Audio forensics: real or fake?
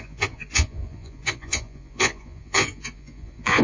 fake